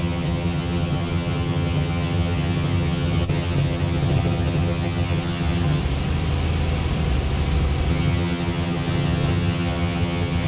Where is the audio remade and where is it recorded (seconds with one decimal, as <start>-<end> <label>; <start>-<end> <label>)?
0.0-5.8 remade; 5.8-7.9 recorded; 7.9-10.5 remade